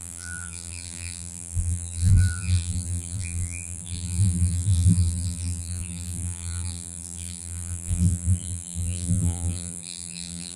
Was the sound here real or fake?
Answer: fake